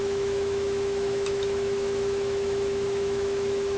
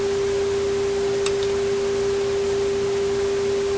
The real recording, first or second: second